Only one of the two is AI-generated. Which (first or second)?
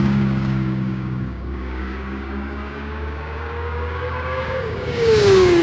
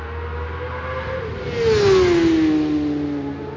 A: first